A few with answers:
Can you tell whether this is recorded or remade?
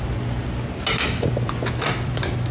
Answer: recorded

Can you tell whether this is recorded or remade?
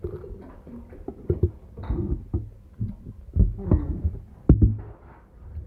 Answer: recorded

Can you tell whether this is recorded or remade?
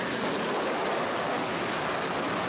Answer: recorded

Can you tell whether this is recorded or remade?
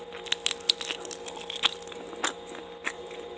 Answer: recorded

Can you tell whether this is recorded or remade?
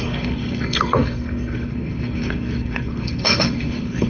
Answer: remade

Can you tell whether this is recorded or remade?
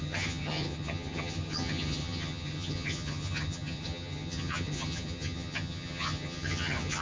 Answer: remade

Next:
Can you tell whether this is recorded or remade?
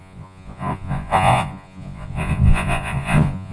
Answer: remade